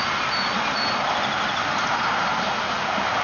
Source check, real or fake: real